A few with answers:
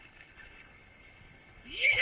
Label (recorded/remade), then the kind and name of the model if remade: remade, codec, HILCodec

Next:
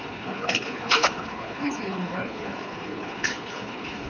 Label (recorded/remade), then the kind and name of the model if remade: remade, codec, HILCodec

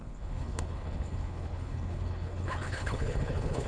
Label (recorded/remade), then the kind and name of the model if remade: remade, codec, HILCodec